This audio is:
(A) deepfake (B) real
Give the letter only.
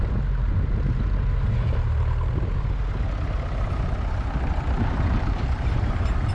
B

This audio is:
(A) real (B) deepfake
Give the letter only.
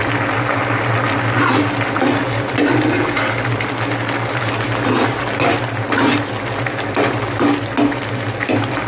A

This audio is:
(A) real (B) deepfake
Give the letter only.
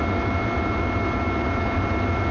A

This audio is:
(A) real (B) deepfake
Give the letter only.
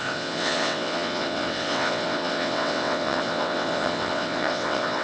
B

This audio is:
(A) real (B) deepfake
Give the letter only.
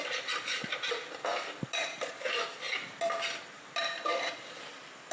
A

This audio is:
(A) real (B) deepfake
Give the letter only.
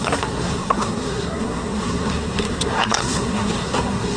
B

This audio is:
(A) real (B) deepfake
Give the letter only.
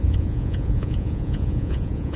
B